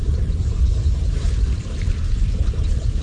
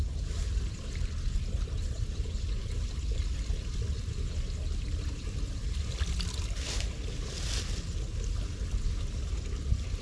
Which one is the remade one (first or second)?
first